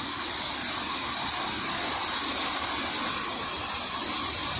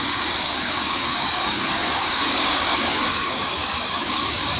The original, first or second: first